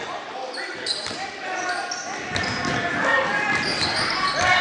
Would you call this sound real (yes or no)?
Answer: yes